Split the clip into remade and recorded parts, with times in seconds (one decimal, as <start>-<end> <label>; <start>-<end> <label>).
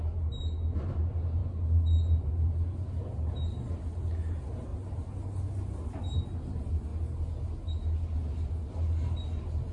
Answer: 0.0-9.7 recorded